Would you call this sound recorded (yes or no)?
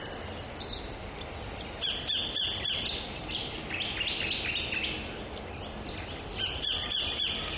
yes